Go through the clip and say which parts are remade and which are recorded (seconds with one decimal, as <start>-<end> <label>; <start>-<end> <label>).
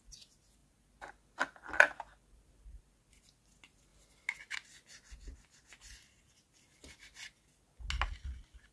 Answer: 0.0-8.7 recorded